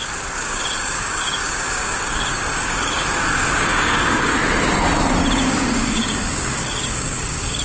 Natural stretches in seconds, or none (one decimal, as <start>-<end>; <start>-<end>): 4.3-5.4